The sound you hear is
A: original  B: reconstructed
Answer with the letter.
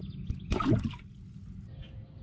A